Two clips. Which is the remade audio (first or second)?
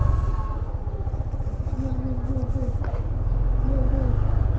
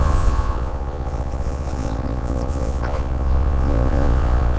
second